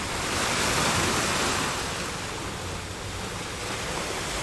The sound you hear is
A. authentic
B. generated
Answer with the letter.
A